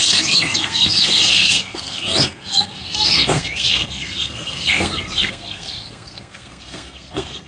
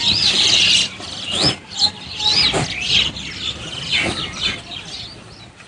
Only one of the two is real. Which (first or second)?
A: second